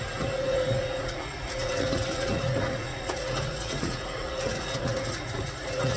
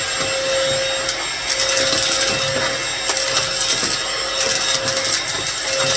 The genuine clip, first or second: second